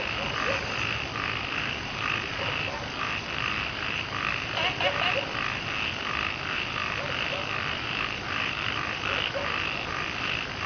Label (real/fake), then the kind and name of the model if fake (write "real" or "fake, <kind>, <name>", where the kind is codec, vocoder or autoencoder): real